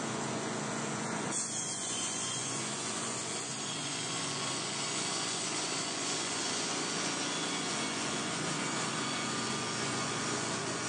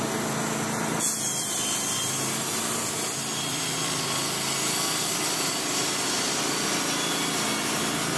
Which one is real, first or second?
second